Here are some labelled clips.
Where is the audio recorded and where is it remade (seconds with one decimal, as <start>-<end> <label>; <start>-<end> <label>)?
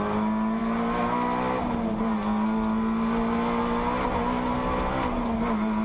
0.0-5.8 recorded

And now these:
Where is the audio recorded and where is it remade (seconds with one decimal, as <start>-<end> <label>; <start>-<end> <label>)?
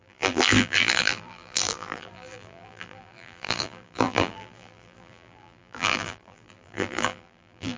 0.0-7.8 remade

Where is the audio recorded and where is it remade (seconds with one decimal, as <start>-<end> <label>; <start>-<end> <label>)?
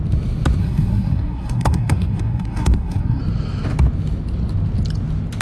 0.0-0.6 recorded; 0.6-3.2 remade; 3.2-5.4 recorded